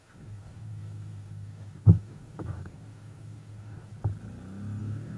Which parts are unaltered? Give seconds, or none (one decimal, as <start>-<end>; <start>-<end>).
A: 3.9-4.8